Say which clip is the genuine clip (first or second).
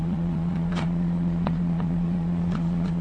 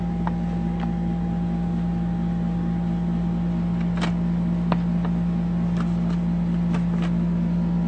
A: second